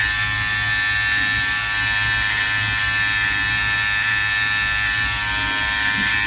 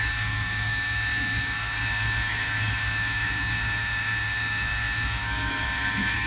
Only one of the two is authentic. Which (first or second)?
first